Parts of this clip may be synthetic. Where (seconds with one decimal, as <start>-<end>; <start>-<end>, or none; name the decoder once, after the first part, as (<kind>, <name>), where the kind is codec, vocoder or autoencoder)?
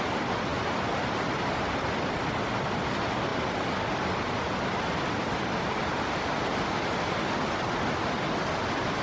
none